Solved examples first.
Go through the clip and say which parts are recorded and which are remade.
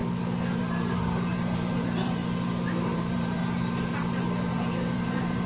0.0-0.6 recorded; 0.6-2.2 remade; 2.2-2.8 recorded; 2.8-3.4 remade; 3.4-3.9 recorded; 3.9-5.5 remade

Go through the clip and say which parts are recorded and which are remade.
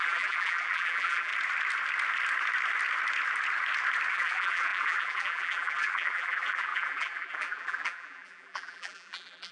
0.0-1.3 remade; 1.3-4.1 recorded; 4.1-9.5 remade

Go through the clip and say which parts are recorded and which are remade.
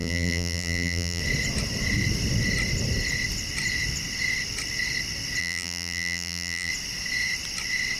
0.0-1.2 remade; 1.2-5.4 recorded; 5.4-6.7 remade; 6.7-8.0 recorded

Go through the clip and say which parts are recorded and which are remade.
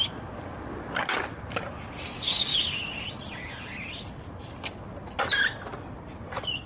0.0-6.7 recorded